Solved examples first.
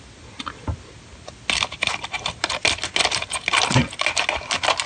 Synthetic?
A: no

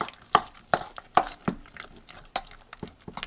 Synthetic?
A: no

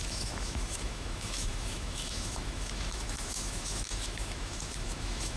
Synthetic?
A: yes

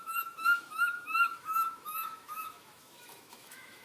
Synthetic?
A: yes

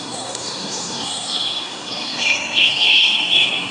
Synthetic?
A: yes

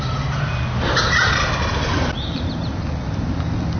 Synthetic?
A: no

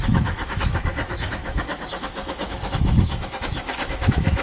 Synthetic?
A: yes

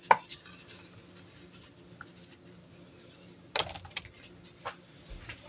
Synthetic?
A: no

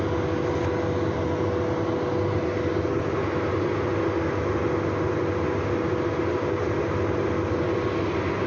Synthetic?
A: no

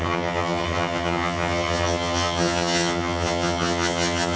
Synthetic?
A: yes